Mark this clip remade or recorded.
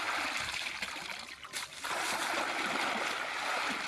recorded